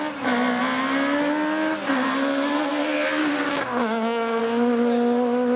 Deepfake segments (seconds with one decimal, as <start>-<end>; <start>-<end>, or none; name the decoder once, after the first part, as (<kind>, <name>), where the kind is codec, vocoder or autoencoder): 3.2-4.4 (codec, DAC)